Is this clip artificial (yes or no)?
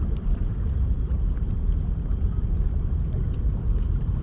yes